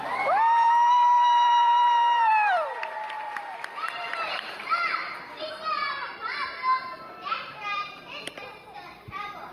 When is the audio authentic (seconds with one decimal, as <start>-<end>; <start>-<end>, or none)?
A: none